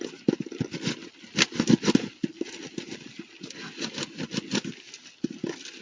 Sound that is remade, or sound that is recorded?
recorded